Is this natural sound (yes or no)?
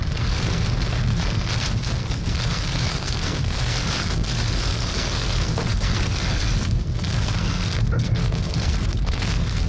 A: no